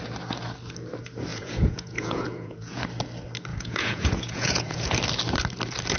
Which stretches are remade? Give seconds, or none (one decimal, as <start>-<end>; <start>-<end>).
1.3-2.8; 3.5-4.9